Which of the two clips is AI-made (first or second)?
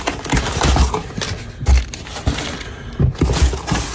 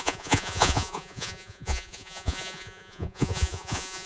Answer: second